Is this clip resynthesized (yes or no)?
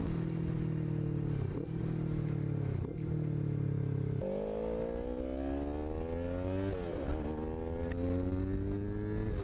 no